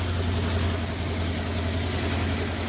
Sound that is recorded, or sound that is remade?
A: recorded